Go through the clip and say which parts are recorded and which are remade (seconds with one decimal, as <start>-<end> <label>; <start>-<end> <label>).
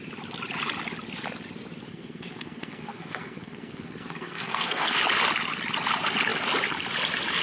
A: 0.0-1.9 recorded; 1.9-5.0 remade; 5.0-7.4 recorded